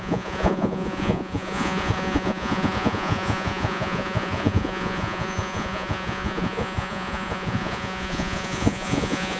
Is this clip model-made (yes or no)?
yes